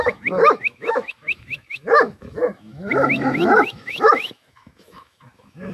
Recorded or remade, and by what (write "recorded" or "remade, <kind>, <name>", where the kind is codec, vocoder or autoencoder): remade, autoencoder, DAC-VAE